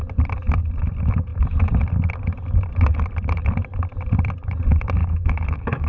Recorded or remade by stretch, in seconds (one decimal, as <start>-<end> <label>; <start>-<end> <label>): 0.0-5.0 recorded; 5.0-5.9 remade

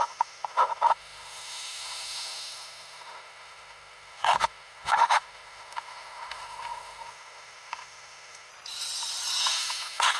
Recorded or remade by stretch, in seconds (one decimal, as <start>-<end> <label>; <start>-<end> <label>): 0.0-8.5 remade; 8.5-9.4 recorded; 9.4-10.2 remade